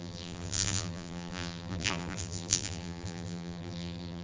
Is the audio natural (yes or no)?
no